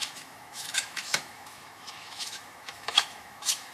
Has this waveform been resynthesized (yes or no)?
yes